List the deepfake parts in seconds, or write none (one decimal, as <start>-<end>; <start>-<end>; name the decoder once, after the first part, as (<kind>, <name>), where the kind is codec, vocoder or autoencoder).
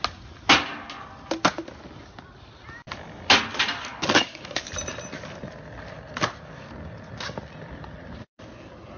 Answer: 3.9-4.7 (codec, DAC)